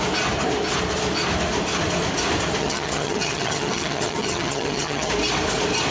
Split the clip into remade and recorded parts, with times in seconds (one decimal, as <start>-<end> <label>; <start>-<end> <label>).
0.0-2.6 recorded; 2.6-5.1 remade; 5.1-5.9 recorded